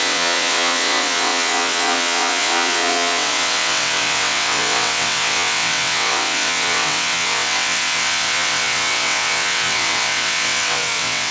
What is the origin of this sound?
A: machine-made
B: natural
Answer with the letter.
A